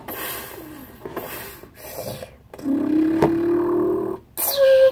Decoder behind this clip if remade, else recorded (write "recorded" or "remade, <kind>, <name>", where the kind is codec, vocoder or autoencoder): recorded